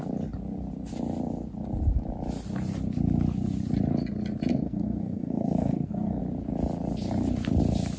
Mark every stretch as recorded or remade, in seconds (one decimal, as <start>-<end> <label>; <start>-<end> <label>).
0.0-4.5 recorded; 4.5-6.2 remade; 6.2-8.0 recorded